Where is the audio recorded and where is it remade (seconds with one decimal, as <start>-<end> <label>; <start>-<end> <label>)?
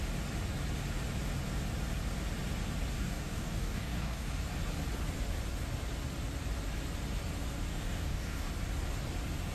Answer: 0.0-2.9 recorded; 2.9-4.4 remade; 4.4-7.7 recorded; 7.7-8.5 remade; 8.5-9.5 recorded